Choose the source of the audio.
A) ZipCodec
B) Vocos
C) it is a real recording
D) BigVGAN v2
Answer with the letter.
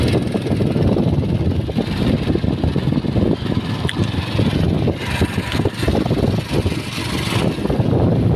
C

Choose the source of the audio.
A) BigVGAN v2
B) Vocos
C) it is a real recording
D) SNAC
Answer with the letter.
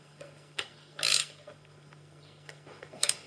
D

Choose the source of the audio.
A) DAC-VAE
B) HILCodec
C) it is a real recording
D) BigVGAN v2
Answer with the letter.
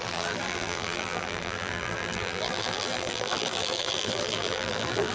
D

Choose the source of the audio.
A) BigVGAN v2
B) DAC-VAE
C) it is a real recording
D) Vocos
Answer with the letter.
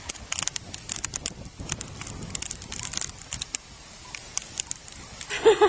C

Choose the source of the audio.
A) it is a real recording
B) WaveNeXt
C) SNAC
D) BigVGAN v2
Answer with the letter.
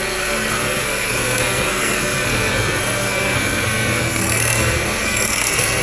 C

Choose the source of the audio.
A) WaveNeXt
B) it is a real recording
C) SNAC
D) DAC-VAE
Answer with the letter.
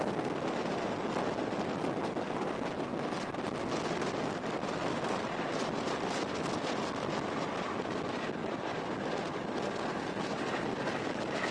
B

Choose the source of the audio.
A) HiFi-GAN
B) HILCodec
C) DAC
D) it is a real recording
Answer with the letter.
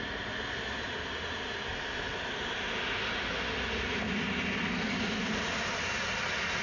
D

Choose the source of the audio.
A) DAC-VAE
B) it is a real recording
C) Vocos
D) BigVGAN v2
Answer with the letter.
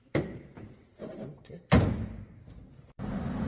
D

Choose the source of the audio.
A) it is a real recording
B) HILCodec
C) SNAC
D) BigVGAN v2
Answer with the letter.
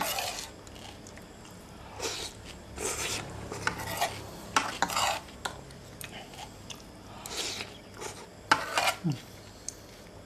A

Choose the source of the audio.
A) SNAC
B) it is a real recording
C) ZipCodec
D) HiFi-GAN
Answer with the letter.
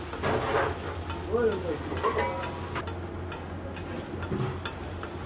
B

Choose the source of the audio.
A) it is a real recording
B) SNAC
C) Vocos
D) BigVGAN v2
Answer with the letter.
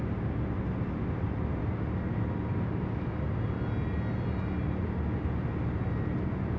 A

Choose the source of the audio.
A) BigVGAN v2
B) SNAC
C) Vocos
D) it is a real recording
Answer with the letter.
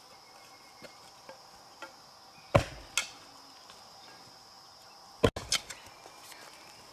D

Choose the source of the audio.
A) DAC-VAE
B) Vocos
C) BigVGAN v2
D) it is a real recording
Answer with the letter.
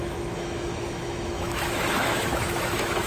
A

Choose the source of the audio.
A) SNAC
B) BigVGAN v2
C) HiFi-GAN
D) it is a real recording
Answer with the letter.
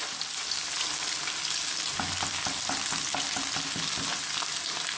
D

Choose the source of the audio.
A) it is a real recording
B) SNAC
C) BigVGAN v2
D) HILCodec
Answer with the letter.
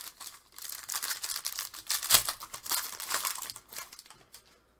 A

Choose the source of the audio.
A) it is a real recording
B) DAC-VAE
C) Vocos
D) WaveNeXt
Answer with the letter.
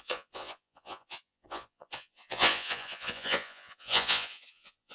C